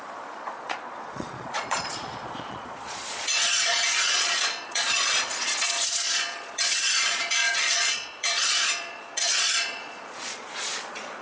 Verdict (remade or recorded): remade